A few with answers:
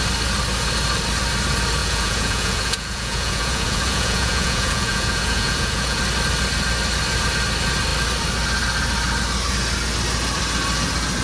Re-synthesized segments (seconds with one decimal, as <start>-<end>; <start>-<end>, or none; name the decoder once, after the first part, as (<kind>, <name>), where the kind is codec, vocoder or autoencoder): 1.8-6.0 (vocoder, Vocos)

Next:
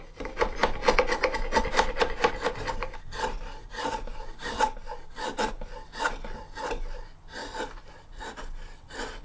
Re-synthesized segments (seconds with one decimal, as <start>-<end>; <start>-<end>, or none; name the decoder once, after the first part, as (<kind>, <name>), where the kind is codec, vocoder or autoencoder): 7.4-8.4 (vocoder, BigVGAN v2)

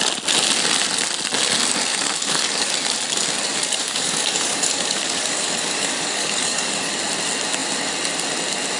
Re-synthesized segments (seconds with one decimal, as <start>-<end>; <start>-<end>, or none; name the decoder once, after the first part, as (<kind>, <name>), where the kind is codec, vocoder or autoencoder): 1.9-2.7 (codec, DAC); 3.5-6.9

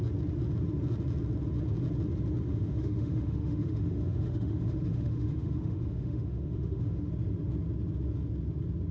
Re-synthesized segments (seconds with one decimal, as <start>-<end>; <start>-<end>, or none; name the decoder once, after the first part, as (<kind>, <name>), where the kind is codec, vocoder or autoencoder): 2.5-7.1 (autoencoder, DAC-VAE)